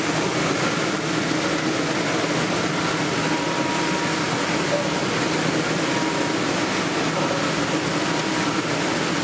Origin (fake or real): real